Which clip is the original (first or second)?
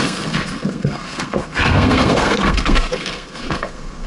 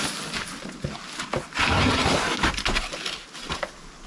second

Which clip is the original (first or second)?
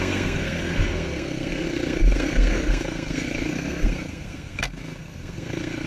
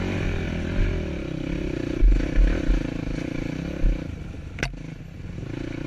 second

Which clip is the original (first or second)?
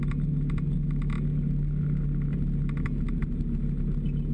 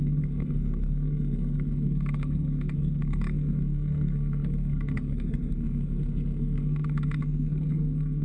first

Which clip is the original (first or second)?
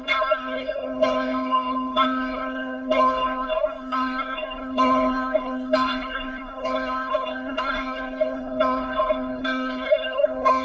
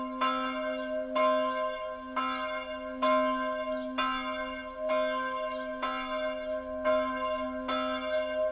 second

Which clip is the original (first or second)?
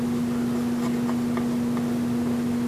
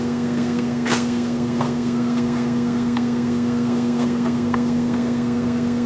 first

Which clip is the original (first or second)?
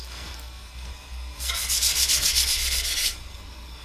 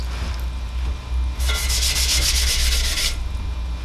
second